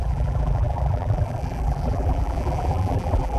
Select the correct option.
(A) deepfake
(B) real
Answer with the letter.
A